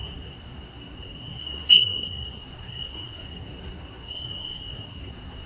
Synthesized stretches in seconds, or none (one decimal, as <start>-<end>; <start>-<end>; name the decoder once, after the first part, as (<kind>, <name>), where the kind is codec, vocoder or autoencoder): 0.0-5.5 (codec, SNAC)